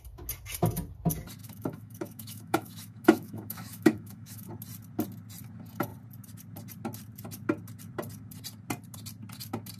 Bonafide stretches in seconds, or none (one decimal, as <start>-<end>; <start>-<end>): 0.0-1.4; 4.5-9.8